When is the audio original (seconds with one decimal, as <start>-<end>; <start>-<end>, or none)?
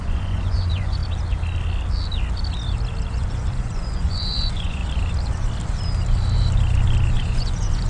1.0-3.1; 4.8-7.2